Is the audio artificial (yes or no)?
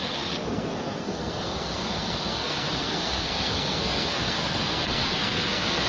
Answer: yes